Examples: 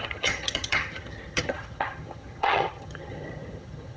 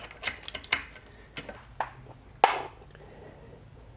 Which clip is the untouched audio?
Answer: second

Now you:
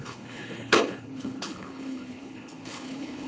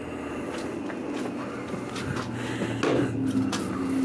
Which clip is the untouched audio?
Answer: second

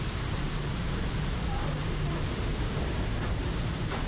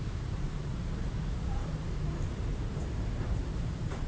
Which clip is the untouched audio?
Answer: first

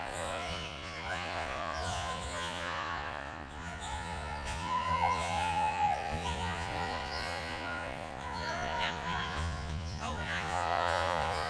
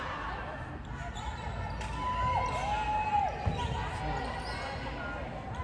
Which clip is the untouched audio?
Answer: second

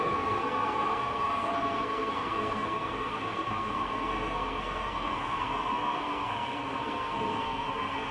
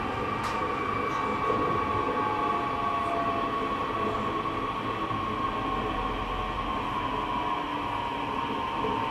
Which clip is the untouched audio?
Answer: second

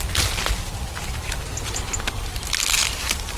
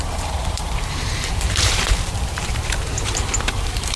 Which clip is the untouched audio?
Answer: first